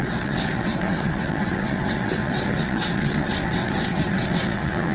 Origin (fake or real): fake